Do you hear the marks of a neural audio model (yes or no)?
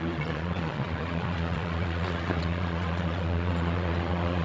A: yes